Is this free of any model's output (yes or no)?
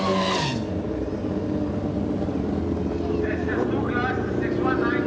yes